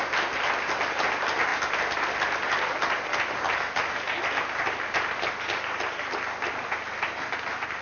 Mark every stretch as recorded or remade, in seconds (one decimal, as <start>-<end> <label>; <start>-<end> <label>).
0.0-7.8 recorded